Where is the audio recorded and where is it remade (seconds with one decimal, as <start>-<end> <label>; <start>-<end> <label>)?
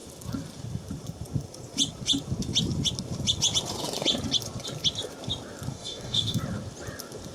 0.0-5.7 recorded; 5.7-6.4 remade; 6.4-7.3 recorded